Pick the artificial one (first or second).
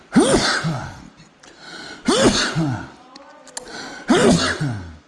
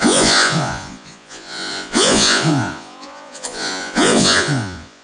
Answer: second